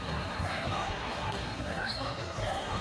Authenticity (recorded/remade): remade